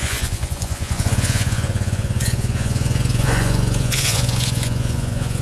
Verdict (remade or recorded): remade